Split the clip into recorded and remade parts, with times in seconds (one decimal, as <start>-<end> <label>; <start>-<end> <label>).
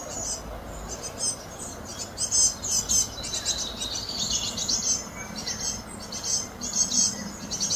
0.0-7.8 recorded